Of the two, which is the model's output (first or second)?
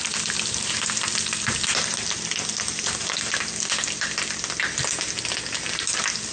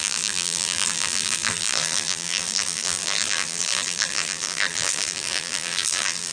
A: second